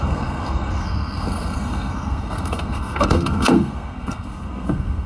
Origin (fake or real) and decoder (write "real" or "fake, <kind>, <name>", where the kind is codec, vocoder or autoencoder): fake, codec, SNAC